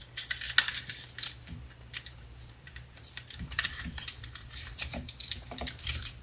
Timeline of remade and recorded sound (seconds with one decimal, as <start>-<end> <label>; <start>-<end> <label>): 0.0-0.7 recorded; 0.7-6.2 remade